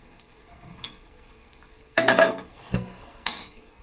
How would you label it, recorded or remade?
remade